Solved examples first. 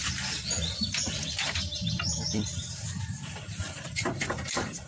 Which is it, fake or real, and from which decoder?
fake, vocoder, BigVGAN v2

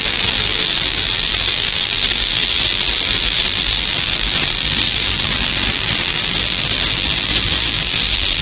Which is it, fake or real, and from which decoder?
fake, vocoder, BigVGAN v2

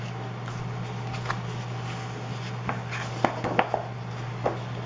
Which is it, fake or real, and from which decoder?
real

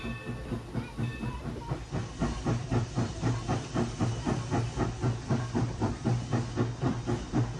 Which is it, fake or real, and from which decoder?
real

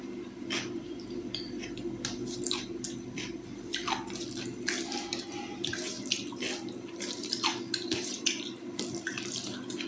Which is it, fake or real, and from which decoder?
fake, vocoder, BigVGAN v2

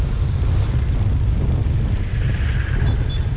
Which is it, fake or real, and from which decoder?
real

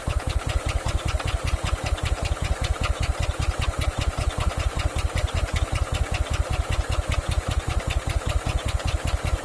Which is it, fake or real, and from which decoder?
fake, vocoder, BigVGAN v2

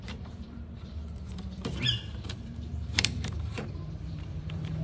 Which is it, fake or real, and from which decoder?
fake, vocoder, BigVGAN v2